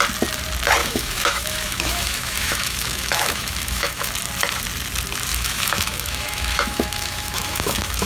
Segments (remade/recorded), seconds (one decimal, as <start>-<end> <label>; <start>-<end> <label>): 0.0-0.8 recorded; 0.8-4.1 remade; 4.1-5.3 recorded; 5.3-8.1 remade